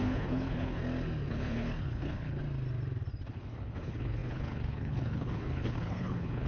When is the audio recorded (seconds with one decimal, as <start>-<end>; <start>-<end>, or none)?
0.8-1.3; 2.4-3.3